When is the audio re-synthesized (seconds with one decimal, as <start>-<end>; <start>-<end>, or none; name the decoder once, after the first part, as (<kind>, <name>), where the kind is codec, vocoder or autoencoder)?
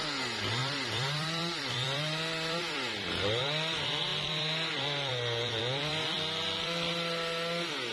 0.0-7.9 (vocoder, BigVGAN v2)